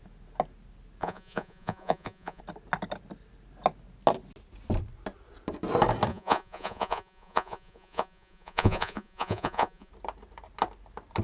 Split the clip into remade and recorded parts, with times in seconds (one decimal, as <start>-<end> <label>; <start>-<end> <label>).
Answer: 0.0-1.0 recorded; 1.0-2.4 remade; 2.4-6.1 recorded; 6.1-9.9 remade; 9.9-11.2 recorded